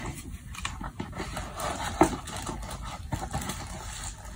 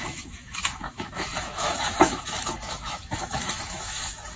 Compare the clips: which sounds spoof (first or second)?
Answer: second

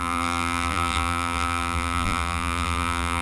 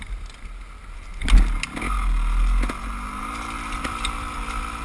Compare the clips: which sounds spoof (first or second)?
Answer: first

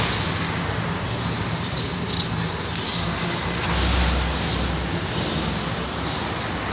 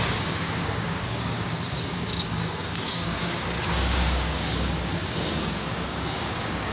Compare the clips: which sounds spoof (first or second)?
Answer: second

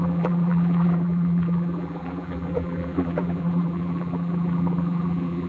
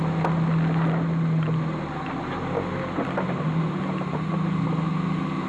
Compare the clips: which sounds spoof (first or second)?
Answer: first